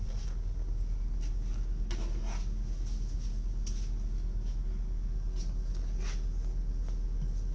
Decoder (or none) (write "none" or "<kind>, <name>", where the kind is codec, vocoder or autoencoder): none